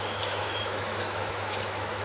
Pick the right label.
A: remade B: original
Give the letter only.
A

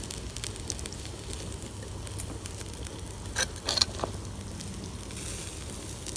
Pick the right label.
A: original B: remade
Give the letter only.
A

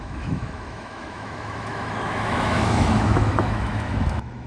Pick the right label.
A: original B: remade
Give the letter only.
B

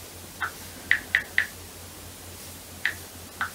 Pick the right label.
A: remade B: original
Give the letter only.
B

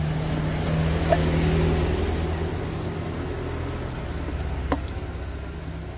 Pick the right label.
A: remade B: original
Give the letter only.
B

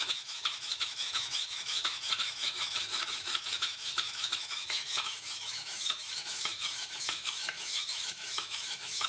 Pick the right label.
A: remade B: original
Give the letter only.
A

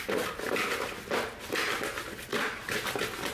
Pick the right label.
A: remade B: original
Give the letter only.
B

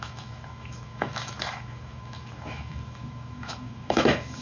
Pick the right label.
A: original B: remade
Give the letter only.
B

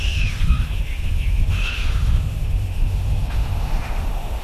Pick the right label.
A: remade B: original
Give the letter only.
A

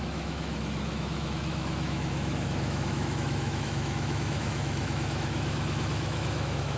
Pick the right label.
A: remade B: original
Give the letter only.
A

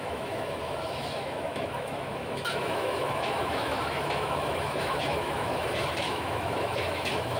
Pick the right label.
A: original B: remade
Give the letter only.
B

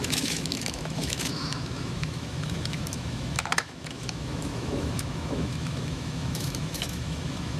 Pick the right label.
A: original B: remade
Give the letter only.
B